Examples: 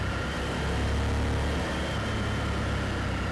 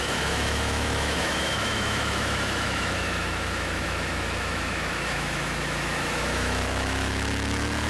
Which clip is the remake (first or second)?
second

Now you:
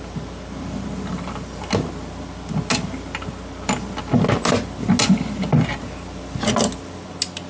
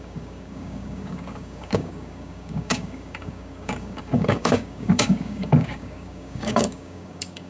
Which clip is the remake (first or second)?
second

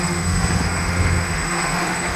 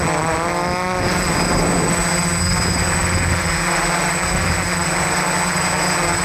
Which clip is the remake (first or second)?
first